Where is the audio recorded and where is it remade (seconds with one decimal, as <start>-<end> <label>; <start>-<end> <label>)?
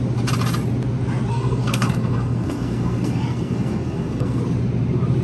0.0-1.3 recorded; 1.3-4.4 remade; 4.4-5.2 recorded